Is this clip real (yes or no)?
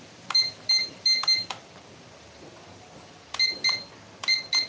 yes